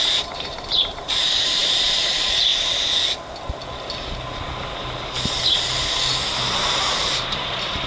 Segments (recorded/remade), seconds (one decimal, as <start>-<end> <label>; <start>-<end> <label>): 0.0-2.5 remade; 2.5-6.4 recorded; 6.4-7.9 remade